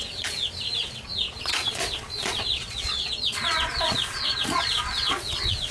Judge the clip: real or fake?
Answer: fake